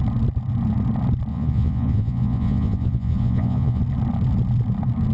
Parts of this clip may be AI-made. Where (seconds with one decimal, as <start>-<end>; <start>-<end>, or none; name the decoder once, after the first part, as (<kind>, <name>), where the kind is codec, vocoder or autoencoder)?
1.3-3.8 (vocoder, Vocos)